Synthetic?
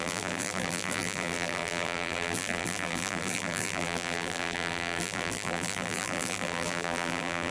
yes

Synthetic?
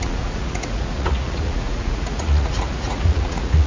yes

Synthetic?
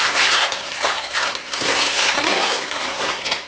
yes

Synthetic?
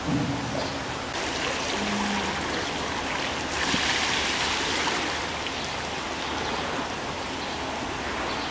no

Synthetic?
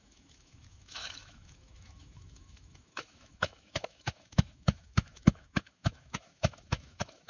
yes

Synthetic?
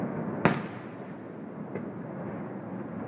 no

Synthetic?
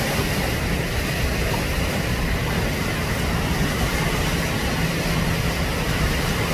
no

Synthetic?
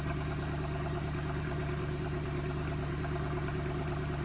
yes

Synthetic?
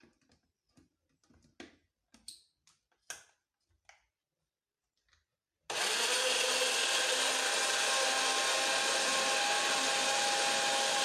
no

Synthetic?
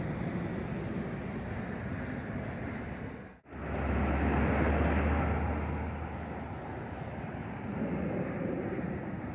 no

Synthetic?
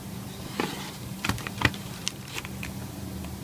yes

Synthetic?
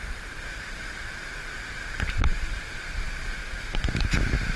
yes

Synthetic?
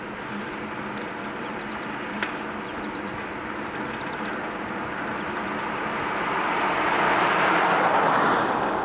no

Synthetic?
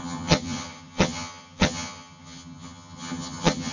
yes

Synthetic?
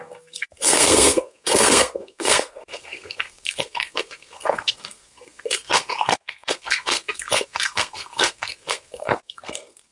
yes